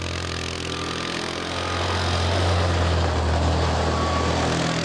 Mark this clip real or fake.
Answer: real